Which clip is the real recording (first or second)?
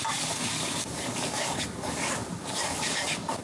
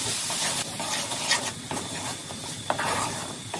second